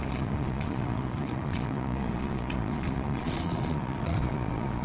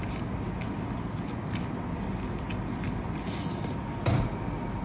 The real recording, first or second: second